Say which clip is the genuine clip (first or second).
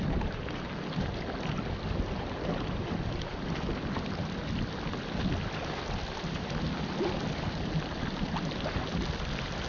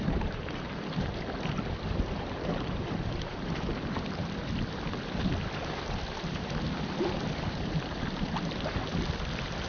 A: first